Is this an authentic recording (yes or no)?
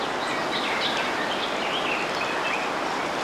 yes